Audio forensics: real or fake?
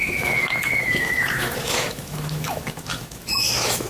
fake